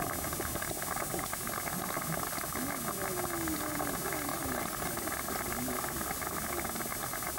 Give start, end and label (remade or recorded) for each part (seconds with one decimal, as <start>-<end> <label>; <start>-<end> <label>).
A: 0.0-4.3 recorded; 4.3-4.9 remade; 4.9-7.4 recorded